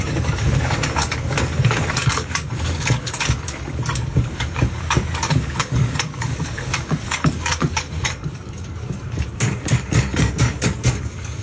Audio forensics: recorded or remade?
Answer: remade